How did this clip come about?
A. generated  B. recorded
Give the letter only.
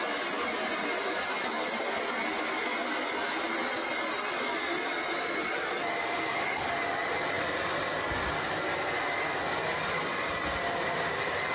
B